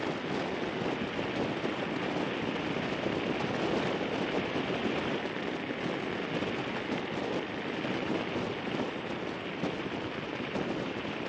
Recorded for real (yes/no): yes